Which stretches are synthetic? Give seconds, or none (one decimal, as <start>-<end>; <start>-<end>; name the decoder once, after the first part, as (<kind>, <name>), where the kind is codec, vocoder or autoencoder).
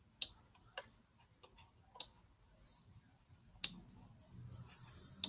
none